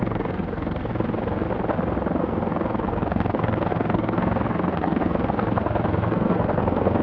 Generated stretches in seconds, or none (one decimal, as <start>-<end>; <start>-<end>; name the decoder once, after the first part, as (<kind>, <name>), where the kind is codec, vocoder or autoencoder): 0.0-0.9 (codec, SNAC); 2.2-7.0